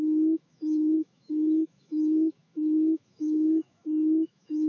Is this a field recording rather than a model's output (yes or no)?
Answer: no